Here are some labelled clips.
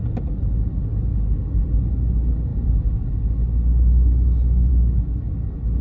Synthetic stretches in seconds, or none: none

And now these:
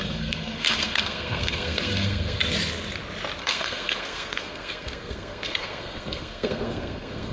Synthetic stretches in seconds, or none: 0.0-2.4 (codec, SNAC); 3.4-7.3

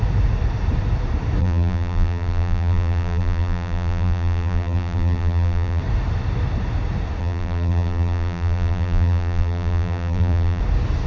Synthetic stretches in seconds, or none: 1.4-5.8 (vocoder, BigVGAN v2); 7.2-10.6

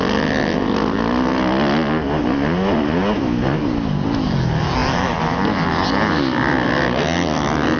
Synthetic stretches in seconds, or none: none

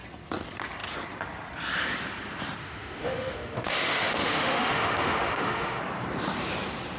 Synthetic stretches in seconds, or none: 2.6-5.8 (autoencoder, DAC-VAE)

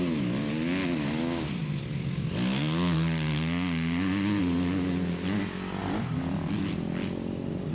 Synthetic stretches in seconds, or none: 5.8-7.7 (vocoder, BigVGAN v2)

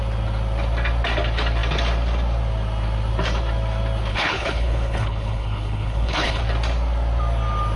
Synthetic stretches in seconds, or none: 4.1-6.4 (codec, HILCodec)